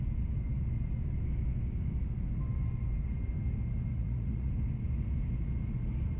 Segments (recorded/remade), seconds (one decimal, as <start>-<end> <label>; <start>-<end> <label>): 0.0-3.9 recorded; 3.9-4.5 remade; 4.5-6.2 recorded